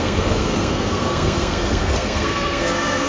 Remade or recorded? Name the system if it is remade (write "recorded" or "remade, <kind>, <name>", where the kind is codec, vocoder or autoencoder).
remade, codec, SNAC